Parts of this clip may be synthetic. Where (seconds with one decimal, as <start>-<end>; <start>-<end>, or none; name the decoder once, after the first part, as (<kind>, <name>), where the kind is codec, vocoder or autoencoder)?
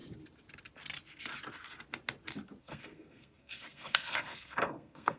2.6-5.2 (codec, SNAC)